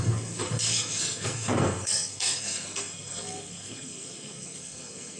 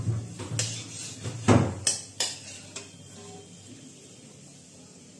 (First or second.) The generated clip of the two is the first